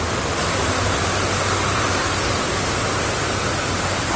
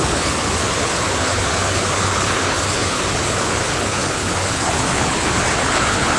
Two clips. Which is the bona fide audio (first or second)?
first